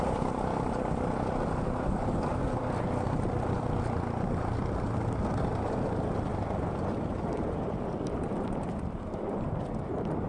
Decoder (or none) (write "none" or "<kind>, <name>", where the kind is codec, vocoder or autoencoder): none